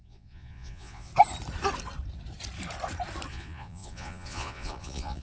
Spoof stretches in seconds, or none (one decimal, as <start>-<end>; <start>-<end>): 0.0-1.1; 3.3-5.2